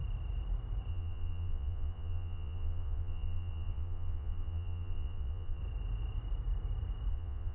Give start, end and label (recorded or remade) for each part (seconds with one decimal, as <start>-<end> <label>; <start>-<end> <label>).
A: 0.0-0.9 recorded; 0.9-5.6 remade; 5.6-7.1 recorded; 7.1-7.5 remade